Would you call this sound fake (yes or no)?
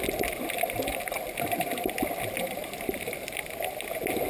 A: no